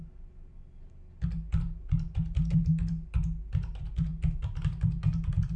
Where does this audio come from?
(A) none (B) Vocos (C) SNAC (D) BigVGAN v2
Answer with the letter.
A